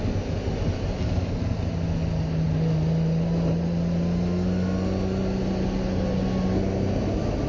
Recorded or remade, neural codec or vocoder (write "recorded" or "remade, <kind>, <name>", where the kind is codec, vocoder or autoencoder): recorded